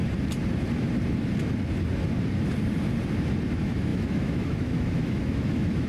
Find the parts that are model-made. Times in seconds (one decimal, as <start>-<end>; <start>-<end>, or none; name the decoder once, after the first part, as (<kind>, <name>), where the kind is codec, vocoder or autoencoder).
3.5-5.9 (autoencoder, DAC-VAE)

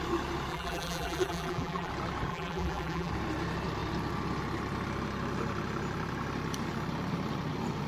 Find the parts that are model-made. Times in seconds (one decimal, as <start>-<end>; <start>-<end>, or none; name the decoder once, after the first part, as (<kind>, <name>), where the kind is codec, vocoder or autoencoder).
0.5-1.9 (vocoder, BigVGAN v2); 2.3-3.1

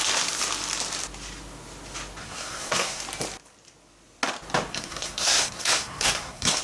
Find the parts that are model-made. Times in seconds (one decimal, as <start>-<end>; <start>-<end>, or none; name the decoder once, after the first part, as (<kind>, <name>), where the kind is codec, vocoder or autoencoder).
2.2-3.0 (codec, SNAC); 4.7-6.6

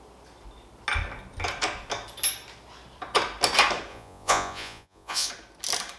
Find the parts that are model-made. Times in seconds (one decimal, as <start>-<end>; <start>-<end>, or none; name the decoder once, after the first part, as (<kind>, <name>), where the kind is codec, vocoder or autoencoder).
3.9-5.3 (vocoder, Vocos)